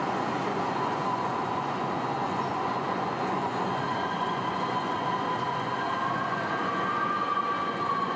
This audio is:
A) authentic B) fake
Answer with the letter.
B